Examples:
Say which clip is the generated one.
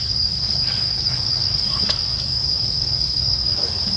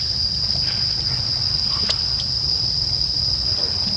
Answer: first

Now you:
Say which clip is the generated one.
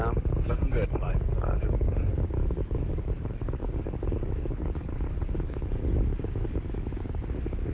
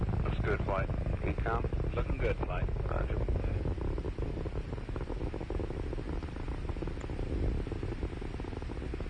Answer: first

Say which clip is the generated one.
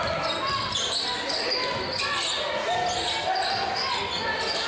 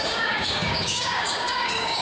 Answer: second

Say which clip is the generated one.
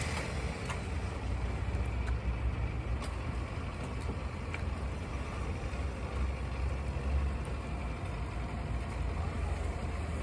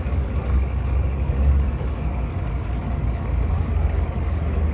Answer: second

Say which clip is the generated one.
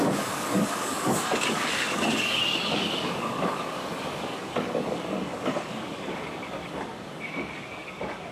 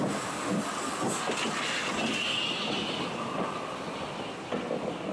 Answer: first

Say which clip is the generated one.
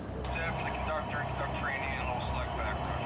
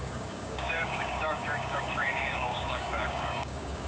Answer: second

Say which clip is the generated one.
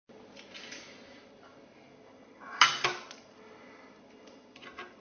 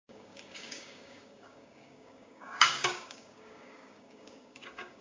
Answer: second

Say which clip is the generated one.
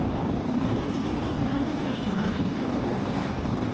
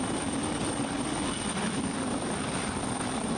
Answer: first